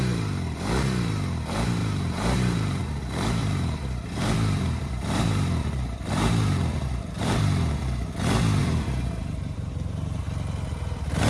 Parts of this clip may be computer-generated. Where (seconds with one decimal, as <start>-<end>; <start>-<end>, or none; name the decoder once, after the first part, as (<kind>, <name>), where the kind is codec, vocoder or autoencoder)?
1.8-2.8 (vocoder, BigVGAN v2); 3.4-8.1; 8.6-10.2